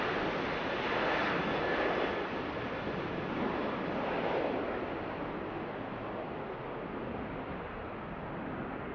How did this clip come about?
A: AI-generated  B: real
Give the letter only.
B